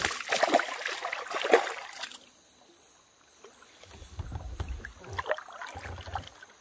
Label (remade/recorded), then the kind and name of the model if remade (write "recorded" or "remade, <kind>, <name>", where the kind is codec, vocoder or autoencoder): recorded